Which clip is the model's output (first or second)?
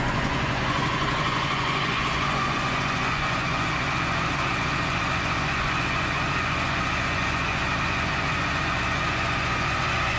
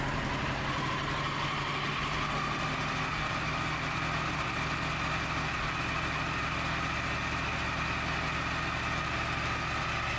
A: first